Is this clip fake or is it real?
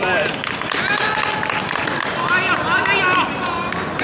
real